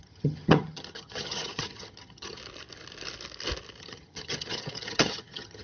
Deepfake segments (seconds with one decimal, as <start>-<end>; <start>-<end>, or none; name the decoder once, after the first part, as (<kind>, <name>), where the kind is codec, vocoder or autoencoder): 0.0-2.4 (vocoder, HiFi-GAN); 3.8-5.6